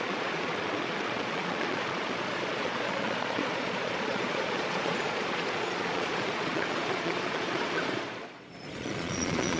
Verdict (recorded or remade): remade